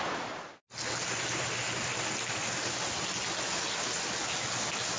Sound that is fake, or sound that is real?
real